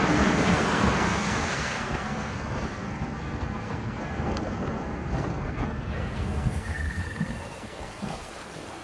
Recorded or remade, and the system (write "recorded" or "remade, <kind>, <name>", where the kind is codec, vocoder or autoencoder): remade, codec, SNAC